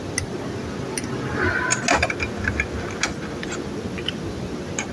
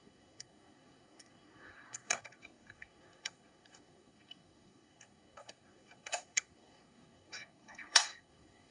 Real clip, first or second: first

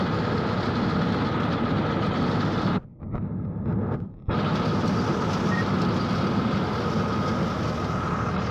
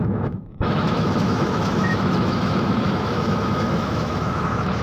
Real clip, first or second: first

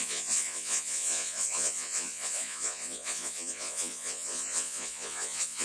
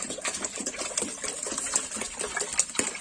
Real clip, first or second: second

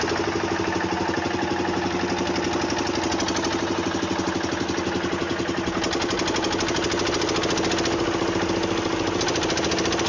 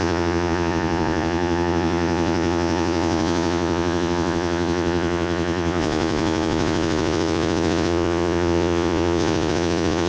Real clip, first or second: first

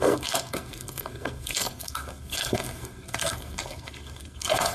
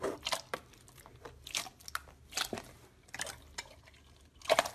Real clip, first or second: second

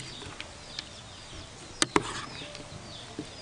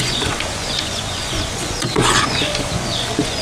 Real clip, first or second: first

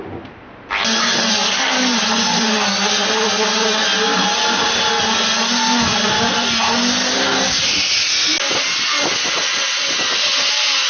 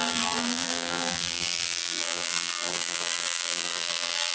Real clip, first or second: first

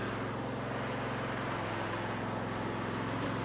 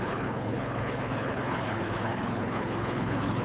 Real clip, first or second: first